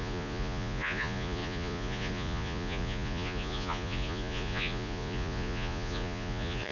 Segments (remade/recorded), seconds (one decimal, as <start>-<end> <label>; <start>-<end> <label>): 0.0-6.7 remade